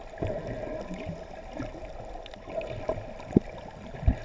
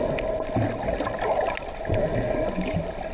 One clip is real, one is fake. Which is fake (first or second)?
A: first